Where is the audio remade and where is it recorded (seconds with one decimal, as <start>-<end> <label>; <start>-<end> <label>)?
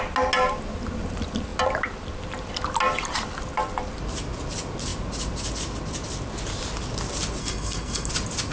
0.0-7.4 recorded; 7.4-8.1 remade; 8.1-8.5 recorded